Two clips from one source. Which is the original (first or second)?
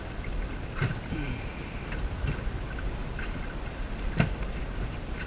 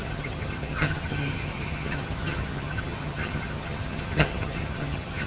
first